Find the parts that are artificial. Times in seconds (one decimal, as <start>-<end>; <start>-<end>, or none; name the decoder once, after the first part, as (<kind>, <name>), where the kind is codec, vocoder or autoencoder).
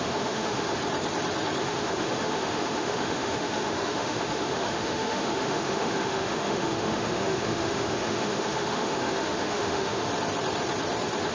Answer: 0.0-0.8 (autoencoder, DAC-VAE); 1.6-10.1